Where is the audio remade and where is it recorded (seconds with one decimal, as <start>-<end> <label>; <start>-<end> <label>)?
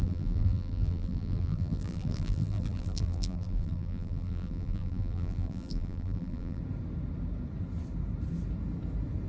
0.0-6.6 remade; 6.6-9.3 recorded